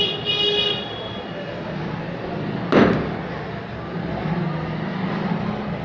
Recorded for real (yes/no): yes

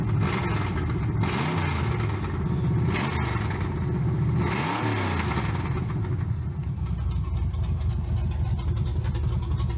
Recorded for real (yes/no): yes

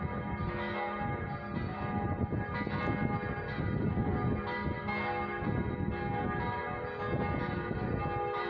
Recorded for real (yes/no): yes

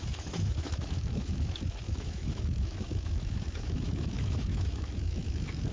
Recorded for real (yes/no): no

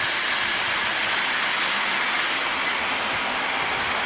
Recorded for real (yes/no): yes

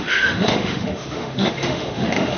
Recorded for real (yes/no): no